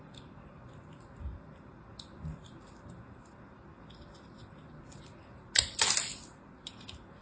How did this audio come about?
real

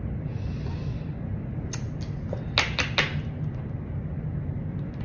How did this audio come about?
real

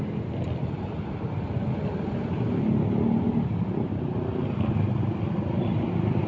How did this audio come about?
real